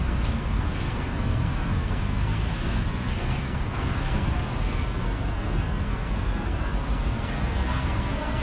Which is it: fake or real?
fake